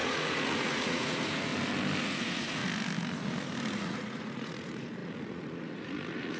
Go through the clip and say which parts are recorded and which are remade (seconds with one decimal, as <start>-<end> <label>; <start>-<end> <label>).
0.0-1.5 remade; 1.5-2.0 recorded; 2.0-2.6 remade; 2.6-3.7 recorded; 3.7-6.4 remade